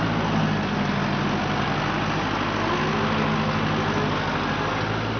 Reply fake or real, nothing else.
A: real